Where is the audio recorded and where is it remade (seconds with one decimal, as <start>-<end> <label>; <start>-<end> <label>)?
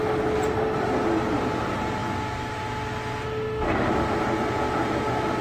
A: 0.0-5.4 recorded